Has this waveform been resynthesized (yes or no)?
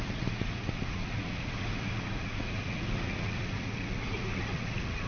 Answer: yes